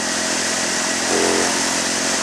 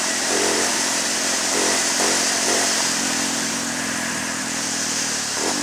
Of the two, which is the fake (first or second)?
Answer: second